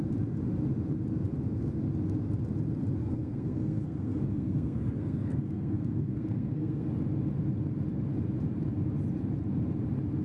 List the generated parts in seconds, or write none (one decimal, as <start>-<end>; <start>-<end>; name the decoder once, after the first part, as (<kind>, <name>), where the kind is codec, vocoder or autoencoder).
3.0-6.9 (codec, SNAC)